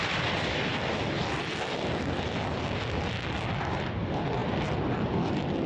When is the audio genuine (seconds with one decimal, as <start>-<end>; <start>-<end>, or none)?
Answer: 0.7-3.6; 4.4-5.7